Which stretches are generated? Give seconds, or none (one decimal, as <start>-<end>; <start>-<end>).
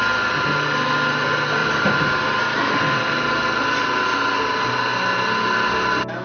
1.6-2.1